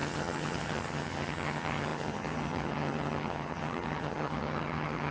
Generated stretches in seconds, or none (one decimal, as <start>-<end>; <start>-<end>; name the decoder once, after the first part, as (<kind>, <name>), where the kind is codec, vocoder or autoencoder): 0.0-5.1 (vocoder, HiFi-GAN)